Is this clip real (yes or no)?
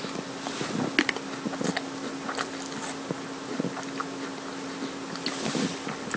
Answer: yes